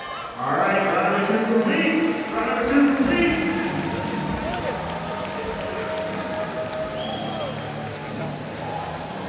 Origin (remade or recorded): recorded